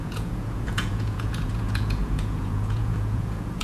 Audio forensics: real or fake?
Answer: fake